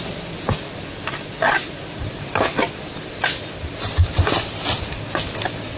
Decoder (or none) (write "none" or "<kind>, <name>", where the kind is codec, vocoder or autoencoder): none